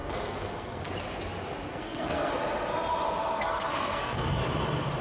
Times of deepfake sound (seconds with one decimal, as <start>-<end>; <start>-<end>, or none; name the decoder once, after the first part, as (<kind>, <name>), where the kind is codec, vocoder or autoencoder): 0.0-0.9 (codec, SNAC); 1.7-2.3; 3.2-4.3